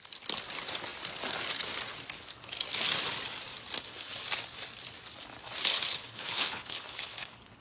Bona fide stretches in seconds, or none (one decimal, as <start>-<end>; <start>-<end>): 0.0-5.7